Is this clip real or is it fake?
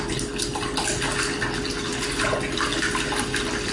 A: real